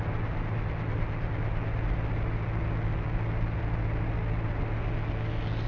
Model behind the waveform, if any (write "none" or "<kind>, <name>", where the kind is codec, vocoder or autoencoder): none